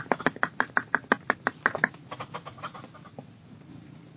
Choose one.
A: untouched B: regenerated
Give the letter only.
A